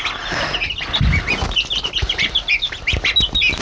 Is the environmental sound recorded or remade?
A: recorded